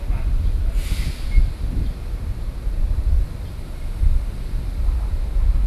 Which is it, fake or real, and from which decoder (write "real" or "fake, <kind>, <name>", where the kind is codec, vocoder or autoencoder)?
real